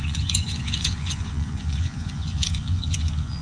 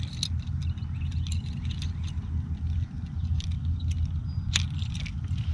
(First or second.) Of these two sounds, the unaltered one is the second